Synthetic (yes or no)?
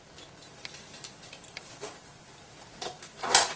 no